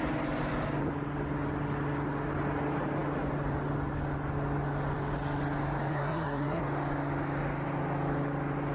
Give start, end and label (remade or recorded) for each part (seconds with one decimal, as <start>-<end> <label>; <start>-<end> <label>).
0.0-5.9 recorded; 5.9-6.6 remade; 6.6-8.7 recorded